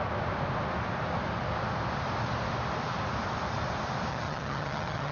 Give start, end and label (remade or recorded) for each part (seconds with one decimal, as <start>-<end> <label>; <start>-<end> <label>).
0.0-4.1 recorded; 4.1-5.1 remade